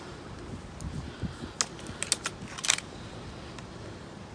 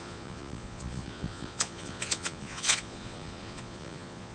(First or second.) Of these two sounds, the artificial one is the second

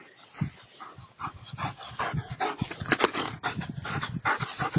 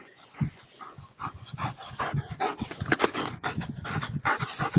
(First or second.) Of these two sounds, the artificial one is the second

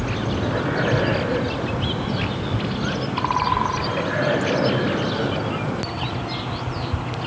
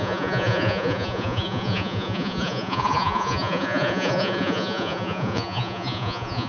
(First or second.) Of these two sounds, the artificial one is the second